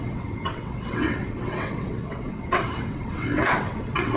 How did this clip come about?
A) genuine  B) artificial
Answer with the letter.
B